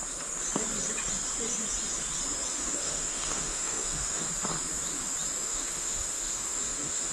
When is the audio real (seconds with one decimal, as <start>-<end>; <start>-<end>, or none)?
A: 0.0-2.5; 4.3-5.4

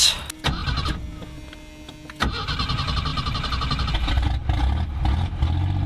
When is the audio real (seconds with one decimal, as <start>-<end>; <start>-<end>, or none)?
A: 0.0-5.9

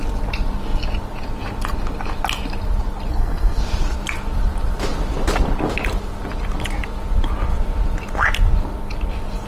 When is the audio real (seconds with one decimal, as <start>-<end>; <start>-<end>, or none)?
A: 0.0-3.1; 3.6-9.5